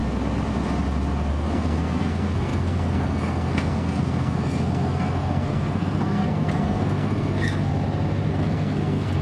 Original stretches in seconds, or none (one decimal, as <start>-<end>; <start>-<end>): 0.0-1.3; 7.7-8.3